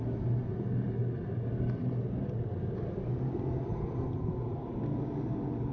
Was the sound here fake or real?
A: real